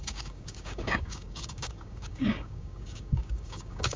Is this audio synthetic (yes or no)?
yes